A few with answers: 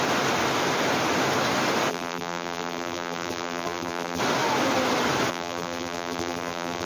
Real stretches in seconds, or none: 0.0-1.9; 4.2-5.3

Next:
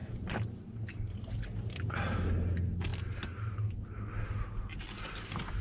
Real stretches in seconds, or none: 0.0-5.6

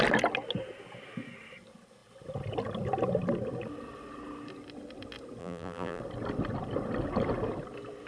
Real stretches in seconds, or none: 0.0-5.4; 6.0-8.1